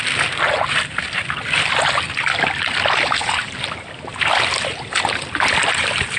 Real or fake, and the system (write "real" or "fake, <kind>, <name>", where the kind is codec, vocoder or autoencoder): real